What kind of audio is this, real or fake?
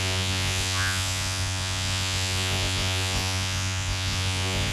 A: fake